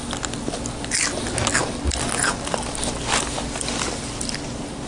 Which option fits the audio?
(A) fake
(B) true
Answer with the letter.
B